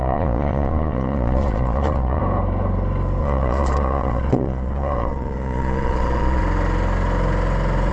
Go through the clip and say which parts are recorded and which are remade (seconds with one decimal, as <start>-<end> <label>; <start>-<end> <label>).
0.0-2.2 remade; 2.2-3.2 recorded; 3.2-6.4 remade; 6.4-7.9 recorded